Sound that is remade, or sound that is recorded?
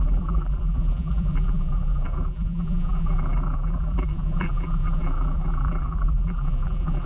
remade